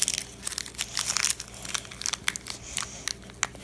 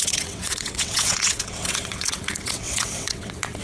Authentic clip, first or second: first